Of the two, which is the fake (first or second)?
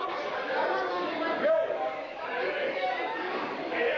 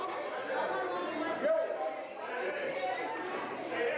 first